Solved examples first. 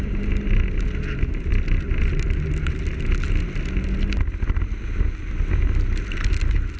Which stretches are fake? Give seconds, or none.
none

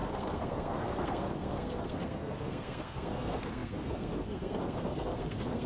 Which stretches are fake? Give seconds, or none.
0.0-5.7 (codec, SNAC)